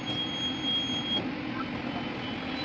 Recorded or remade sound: recorded